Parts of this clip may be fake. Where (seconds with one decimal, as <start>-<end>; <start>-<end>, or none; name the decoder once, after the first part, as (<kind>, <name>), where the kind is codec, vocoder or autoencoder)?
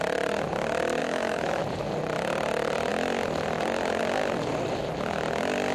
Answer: 1.0-1.6 (autoencoder, DAC-VAE)